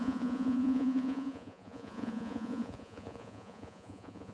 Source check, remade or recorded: remade